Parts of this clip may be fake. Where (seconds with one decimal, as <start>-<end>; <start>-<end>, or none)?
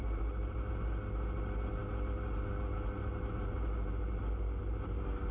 none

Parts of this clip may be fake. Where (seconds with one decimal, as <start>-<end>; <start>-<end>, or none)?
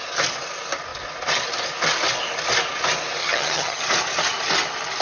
3.2-3.8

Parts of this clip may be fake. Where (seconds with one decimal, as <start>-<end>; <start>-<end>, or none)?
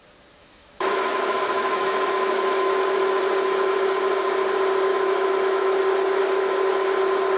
0.4-3.2; 4.9-5.8; 6.2-6.7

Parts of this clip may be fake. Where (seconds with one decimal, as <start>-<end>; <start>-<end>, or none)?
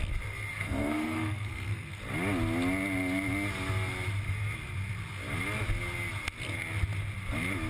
0.5-2.0